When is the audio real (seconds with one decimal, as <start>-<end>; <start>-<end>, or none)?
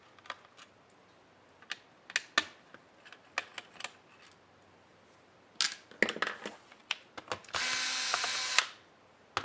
0.0-9.4